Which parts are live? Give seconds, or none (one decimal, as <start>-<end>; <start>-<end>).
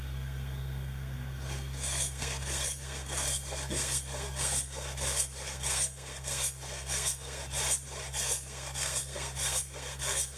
7.4-8.1